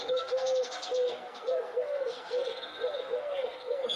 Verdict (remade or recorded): remade